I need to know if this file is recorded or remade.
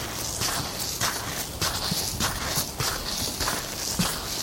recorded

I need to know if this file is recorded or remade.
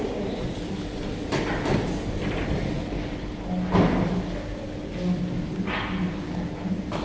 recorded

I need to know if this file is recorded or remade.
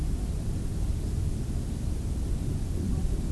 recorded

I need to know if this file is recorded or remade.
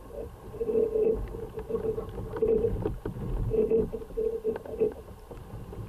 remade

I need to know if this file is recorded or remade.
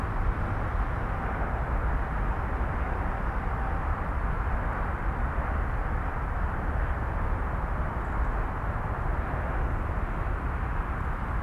recorded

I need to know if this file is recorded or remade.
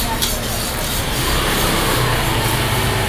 recorded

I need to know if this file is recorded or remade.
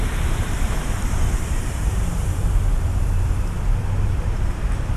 remade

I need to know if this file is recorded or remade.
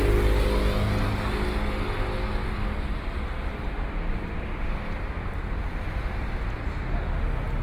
recorded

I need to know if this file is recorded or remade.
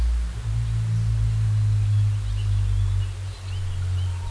recorded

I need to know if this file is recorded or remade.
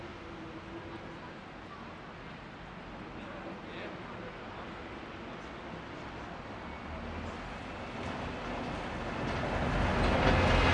recorded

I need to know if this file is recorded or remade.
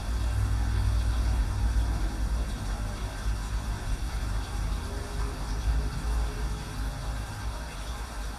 recorded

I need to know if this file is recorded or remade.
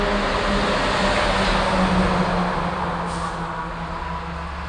recorded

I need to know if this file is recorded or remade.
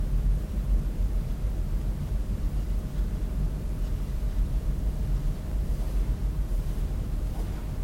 remade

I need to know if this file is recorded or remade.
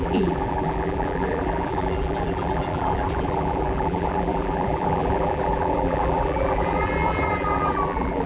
remade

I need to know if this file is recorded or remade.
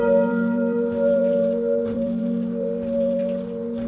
remade